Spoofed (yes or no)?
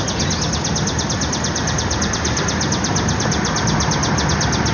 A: no